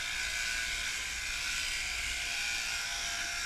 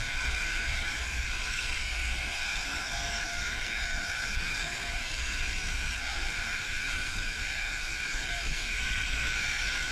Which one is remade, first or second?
second